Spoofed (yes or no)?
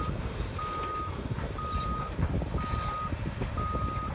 no